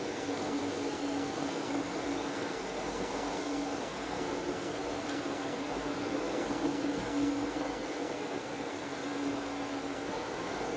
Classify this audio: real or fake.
fake